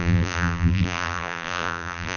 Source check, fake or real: fake